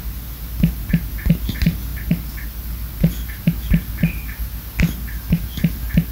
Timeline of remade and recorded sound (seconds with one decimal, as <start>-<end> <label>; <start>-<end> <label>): 0.0-6.1 recorded